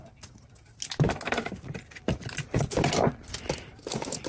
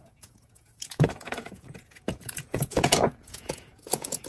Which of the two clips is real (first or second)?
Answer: first